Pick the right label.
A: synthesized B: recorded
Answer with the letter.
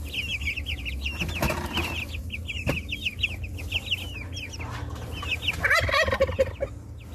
B